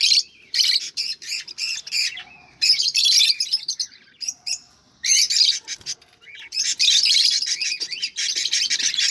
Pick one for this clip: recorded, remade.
remade